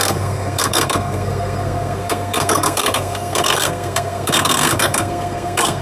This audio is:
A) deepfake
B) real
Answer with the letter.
A